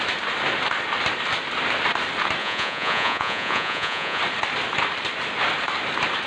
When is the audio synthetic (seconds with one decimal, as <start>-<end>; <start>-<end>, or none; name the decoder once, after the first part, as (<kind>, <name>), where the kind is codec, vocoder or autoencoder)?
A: 2.4-4.2 (vocoder, Vocos)